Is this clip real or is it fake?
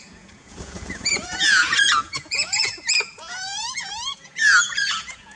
fake